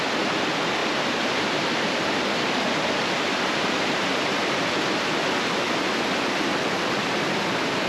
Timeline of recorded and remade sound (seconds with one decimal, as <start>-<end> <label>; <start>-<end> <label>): 0.0-0.8 recorded; 0.8-4.7 remade; 4.7-7.9 recorded